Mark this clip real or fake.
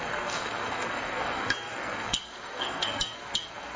fake